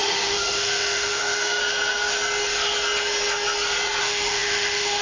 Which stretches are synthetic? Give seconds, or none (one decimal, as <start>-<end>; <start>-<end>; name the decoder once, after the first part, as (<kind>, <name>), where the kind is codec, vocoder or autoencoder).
0.0-1.6 (autoencoder, DAC-VAE); 4.0-5.0

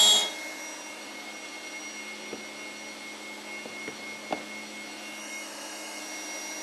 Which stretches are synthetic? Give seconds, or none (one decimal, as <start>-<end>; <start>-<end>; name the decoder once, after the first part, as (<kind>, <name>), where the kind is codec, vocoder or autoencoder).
5.2-6.0 (autoencoder, DAC-VAE)

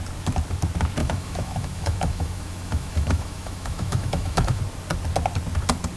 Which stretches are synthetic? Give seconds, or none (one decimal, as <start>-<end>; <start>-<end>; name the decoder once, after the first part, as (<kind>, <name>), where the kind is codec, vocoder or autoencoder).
1.0-4.6 (autoencoder, DAC-VAE)